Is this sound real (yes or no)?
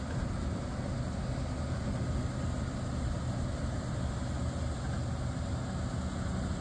yes